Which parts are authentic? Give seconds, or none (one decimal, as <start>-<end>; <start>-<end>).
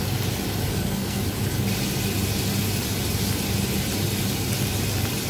0.0-0.7; 1.2-5.3